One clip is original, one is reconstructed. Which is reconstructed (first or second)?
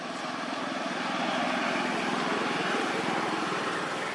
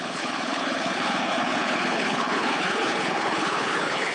second